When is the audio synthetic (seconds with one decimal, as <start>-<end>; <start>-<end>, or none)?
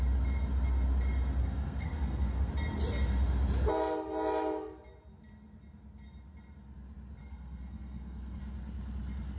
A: 1.4-2.5; 7.2-8.4